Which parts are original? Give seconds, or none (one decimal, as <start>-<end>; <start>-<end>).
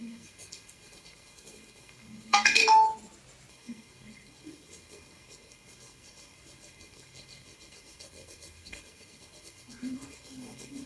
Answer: 2.6-3.5